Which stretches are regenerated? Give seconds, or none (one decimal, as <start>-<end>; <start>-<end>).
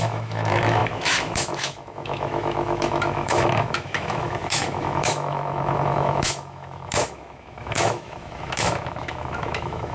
0.0-9.9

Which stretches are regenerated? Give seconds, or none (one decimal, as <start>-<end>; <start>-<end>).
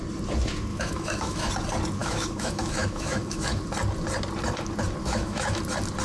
0.7-1.5; 2.0-3.6; 5.0-5.6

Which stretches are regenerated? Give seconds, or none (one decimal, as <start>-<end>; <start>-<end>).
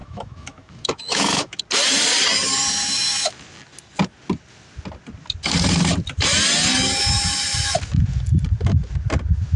0.0-1.6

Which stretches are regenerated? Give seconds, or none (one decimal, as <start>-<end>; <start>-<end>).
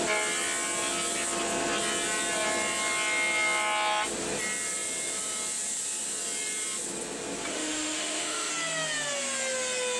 7.5-8.5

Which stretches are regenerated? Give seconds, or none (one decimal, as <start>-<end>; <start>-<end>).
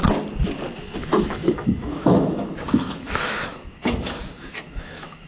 0.8-5.3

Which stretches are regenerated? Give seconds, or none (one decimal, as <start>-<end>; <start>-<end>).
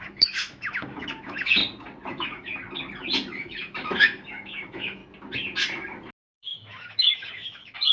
0.0-1.6; 2.1-2.5; 3.3-5.0; 6.1-7.9